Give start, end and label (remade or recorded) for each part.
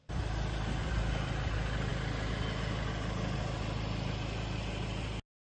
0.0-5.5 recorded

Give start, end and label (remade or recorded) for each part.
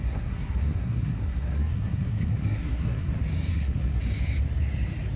0.0-3.1 remade; 3.1-3.5 recorded; 3.5-4.0 remade; 4.0-5.2 recorded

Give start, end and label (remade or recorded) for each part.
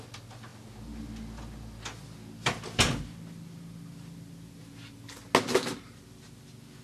0.0-6.8 recorded